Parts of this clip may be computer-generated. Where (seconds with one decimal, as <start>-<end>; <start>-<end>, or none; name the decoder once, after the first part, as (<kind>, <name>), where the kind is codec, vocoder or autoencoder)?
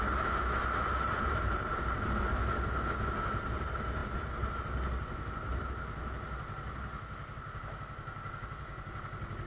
0.6-1.8 (vocoder, BigVGAN v2); 4.0-4.6